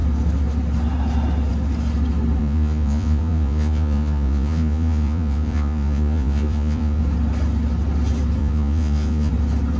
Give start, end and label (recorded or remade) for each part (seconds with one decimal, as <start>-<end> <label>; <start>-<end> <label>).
0.0-2.4 recorded; 2.4-7.0 remade; 7.0-8.4 recorded; 8.4-9.3 remade; 9.3-9.8 recorded